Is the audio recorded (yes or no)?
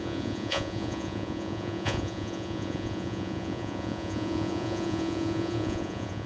no